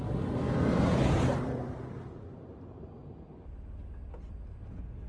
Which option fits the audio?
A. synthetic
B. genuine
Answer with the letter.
B